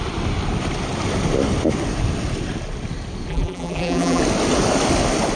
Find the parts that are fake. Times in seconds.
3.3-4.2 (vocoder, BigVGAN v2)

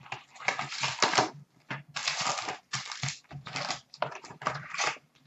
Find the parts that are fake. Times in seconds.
2.0-5.3 (vocoder, BigVGAN v2)

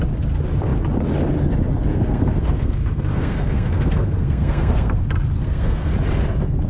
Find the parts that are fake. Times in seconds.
1.9-5.0 (codec, SNAC); 5.4-5.9

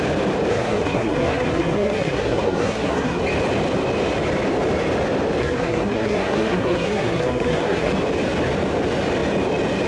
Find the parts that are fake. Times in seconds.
0.5-3.2 (codec, SNAC); 5.4-7.9

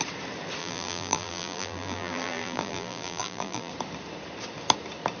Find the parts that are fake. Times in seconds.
0.6-3.7 (vocoder, BigVGAN v2)

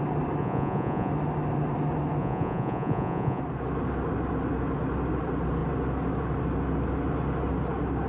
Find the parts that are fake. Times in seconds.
0.4-1.1 (vocoder, Vocos); 2.2-3.4

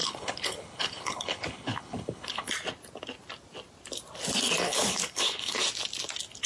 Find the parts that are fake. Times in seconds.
0.0-2.5 (codec, HILCodec); 4.7-5.6